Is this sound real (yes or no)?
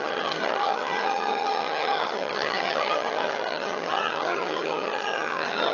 no